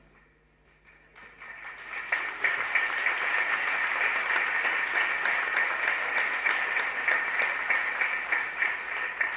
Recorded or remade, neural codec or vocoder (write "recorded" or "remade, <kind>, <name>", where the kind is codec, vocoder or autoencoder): recorded